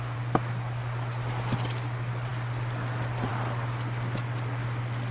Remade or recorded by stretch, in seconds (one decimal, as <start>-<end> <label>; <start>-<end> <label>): 0.0-5.1 recorded